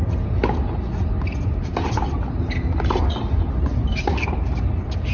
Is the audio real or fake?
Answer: real